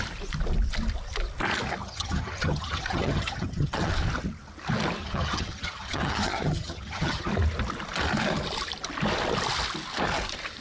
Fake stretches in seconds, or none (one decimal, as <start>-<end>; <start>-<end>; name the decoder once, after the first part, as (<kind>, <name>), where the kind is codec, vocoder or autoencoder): 1.8-3.9 (vocoder, HiFi-GAN); 5.0-7.3